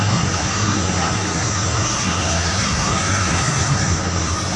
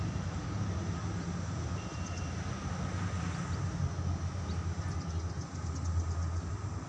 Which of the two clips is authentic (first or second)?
second